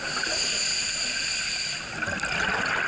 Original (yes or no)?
yes